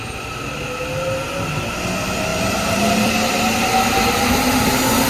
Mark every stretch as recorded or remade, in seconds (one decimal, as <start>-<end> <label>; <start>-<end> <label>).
0.0-2.3 recorded; 2.3-3.4 remade; 3.4-5.1 recorded